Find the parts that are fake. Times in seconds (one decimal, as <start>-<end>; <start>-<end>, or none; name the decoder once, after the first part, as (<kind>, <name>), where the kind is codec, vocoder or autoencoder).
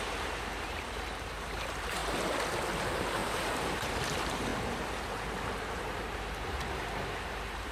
0.0-2.0 (vocoder, BigVGAN v2); 2.8-7.7